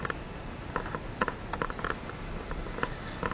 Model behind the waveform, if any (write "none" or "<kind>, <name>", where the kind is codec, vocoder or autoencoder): none